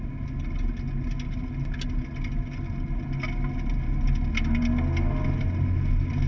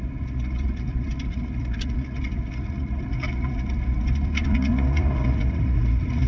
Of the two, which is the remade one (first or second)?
second